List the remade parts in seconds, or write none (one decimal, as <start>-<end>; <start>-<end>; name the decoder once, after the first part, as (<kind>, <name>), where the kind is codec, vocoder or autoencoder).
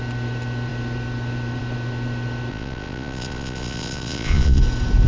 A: 2.5-4.6 (vocoder, Vocos)